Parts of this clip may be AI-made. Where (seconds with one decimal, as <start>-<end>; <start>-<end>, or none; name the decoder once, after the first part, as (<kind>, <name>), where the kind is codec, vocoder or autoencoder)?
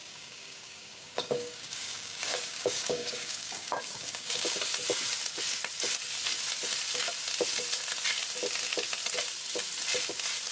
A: 0.0-4.6 (codec, DAC)